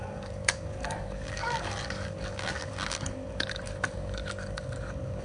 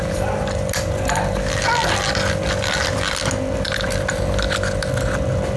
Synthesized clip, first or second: first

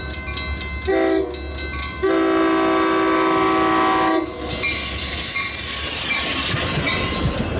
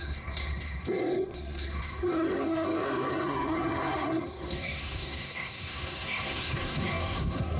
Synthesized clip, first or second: second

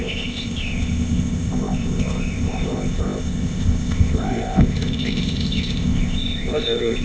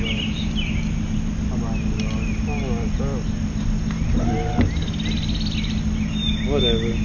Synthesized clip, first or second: first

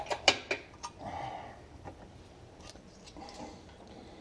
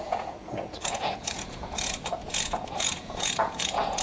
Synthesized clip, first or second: second